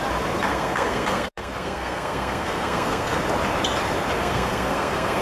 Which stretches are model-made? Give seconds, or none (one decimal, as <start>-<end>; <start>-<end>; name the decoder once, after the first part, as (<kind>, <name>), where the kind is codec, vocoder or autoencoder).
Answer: 0.5-3.2 (codec, SNAC); 4.2-5.2